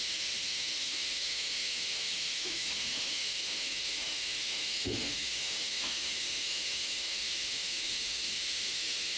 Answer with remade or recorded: remade